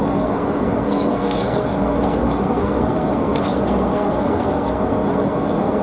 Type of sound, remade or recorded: remade